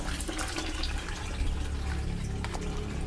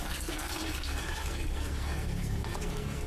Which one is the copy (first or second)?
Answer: second